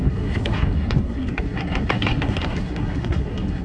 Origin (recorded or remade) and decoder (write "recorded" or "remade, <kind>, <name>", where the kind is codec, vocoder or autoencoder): remade, codec, SNAC